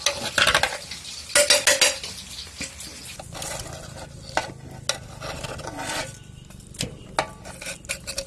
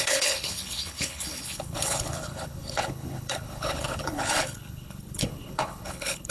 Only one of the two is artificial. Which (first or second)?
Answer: second